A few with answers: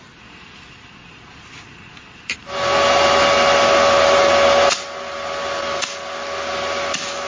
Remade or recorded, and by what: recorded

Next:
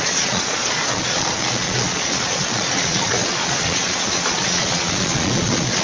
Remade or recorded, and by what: remade, vocoder, Vocos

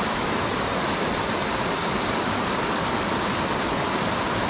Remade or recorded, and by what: recorded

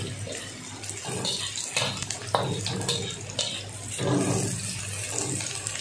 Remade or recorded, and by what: recorded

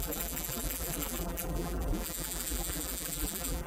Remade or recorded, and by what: remade, vocoder, BigVGAN v2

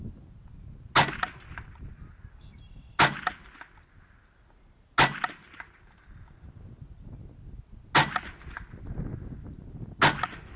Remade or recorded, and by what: recorded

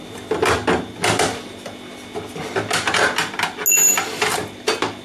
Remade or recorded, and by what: recorded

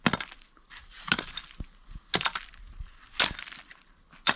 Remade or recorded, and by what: recorded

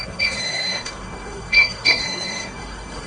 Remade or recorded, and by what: remade, codec, SNAC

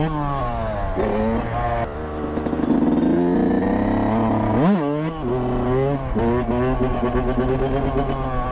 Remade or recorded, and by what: recorded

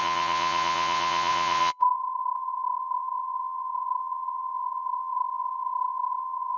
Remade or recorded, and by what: remade, vocoder, Vocos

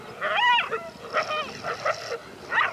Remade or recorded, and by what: recorded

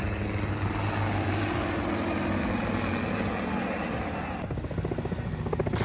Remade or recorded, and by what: recorded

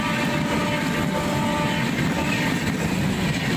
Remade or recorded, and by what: recorded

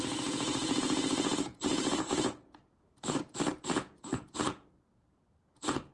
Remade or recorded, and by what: remade, vocoder, Vocos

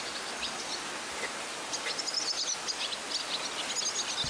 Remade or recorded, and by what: recorded